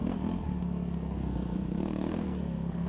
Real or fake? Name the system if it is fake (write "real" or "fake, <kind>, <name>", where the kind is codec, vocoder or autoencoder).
fake, codec, SNAC